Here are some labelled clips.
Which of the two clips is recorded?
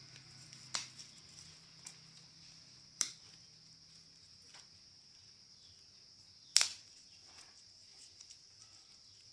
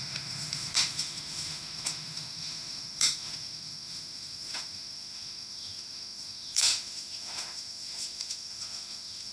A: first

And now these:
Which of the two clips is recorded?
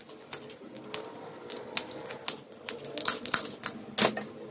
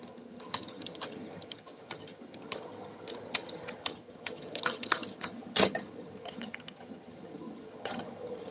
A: first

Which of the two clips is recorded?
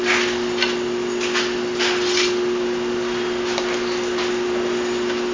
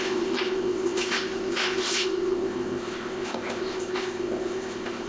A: first